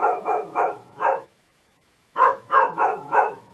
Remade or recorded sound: remade